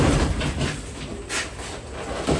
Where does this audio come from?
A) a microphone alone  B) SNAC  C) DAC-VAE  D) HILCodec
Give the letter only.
A